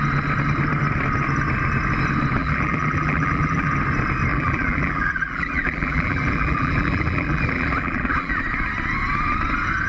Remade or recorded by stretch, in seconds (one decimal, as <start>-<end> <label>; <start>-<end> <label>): 0.0-2.4 recorded; 2.4-3.7 remade; 3.7-4.3 recorded; 4.3-8.4 remade; 8.4-9.9 recorded